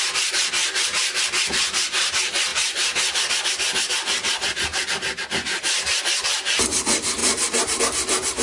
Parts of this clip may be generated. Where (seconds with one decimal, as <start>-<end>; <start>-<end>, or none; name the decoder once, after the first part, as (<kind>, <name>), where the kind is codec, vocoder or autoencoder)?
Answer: 0.6-1.2 (vocoder, BigVGAN v2); 2.5-3.3; 4.7-6.0; 7.2-7.8